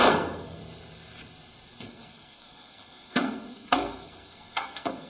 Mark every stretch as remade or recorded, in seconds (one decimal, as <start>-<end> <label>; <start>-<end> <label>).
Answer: 0.0-0.6 remade; 0.6-1.8 recorded; 1.8-5.1 remade